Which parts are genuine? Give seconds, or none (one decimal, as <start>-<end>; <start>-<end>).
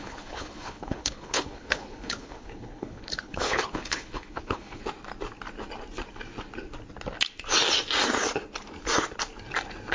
4.8-9.9